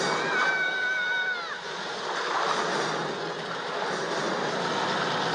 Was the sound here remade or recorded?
recorded